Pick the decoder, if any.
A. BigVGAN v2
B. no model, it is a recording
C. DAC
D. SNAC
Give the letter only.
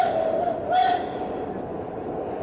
B